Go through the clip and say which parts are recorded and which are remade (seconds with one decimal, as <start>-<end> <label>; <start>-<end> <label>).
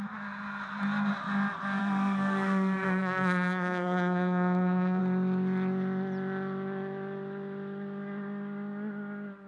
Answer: 0.0-1.8 recorded; 1.8-5.0 remade; 5.0-9.5 recorded